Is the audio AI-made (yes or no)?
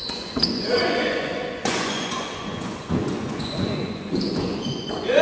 yes